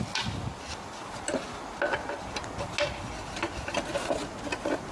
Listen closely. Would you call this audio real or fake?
real